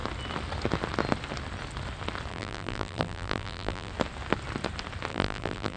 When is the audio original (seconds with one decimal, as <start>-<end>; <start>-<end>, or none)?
0.0-2.3; 3.9-5.1